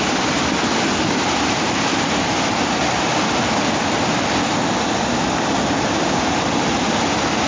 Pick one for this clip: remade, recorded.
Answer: recorded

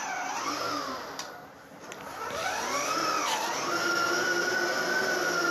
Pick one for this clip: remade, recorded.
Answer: recorded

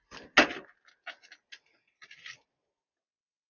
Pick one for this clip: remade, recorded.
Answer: recorded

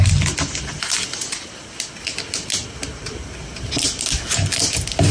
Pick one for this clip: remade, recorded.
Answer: recorded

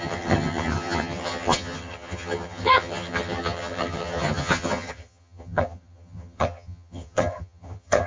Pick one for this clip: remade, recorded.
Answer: remade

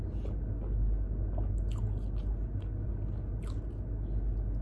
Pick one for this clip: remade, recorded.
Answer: recorded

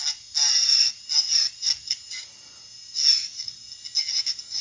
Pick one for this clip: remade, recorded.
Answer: recorded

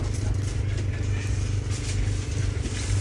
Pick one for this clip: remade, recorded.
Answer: recorded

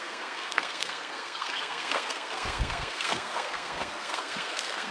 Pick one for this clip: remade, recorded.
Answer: remade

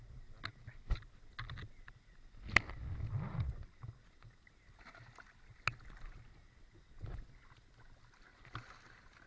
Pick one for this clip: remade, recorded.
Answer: recorded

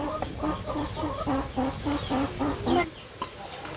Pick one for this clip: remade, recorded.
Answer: recorded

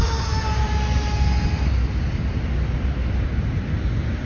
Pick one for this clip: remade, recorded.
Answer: recorded